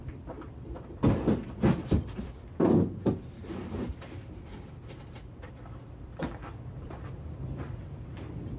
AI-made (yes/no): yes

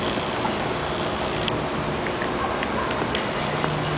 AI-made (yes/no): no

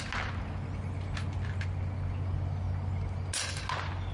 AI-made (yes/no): no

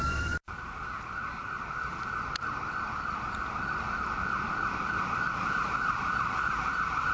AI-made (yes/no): yes